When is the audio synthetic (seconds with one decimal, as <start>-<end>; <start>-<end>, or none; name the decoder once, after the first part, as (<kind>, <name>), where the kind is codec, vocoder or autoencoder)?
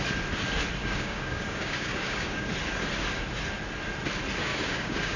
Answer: 0.8-2.5 (codec, DAC); 4.5-5.2